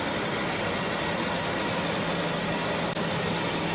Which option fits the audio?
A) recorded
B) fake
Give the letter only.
A